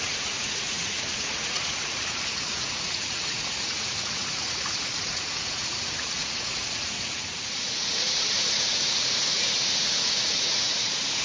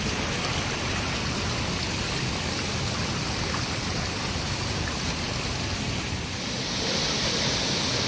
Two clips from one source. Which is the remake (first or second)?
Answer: first